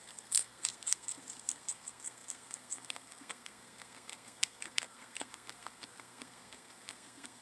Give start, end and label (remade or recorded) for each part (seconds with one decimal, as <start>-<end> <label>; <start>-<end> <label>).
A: 0.0-7.4 remade